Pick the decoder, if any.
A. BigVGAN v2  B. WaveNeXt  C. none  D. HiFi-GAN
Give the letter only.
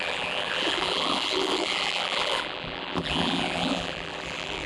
A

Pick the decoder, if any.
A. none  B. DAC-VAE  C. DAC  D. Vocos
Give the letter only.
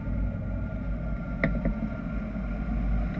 A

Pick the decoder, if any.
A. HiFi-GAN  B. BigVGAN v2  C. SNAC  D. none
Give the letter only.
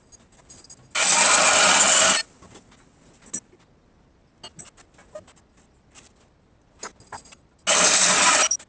D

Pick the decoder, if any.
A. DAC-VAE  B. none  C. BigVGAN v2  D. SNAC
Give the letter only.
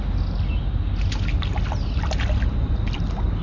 B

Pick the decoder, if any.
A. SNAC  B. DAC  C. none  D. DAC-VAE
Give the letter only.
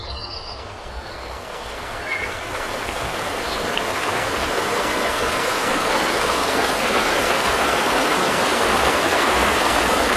A